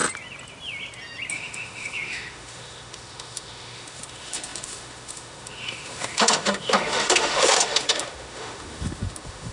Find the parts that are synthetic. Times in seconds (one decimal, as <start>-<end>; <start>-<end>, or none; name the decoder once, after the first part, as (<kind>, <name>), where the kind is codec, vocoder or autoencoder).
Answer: 1.3-9.5 (autoencoder, DAC-VAE)